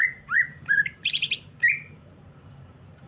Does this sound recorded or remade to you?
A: remade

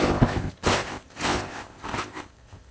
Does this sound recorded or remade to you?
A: remade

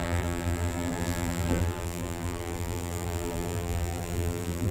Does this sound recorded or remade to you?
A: remade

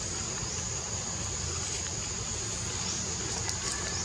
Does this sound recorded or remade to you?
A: recorded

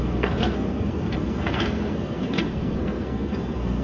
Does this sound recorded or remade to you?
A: remade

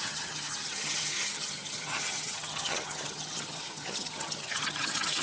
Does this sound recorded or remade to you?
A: remade